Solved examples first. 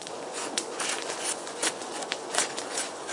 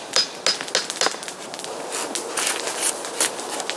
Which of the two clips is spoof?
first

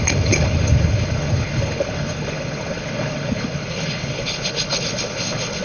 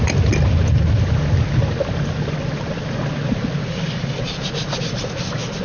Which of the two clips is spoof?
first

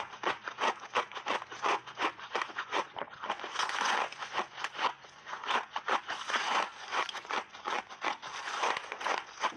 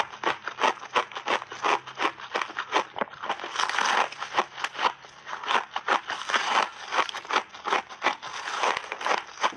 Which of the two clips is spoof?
first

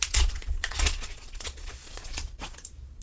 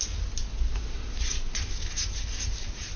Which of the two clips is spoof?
first